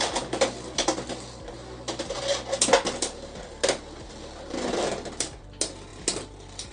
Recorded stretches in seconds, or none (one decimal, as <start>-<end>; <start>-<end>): 0.0-6.7